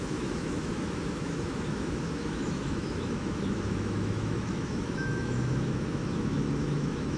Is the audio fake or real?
fake